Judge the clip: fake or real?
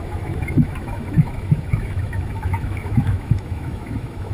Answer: fake